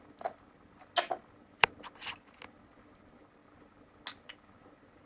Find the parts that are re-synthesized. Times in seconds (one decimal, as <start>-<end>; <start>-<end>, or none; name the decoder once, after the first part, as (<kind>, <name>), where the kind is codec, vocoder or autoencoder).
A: none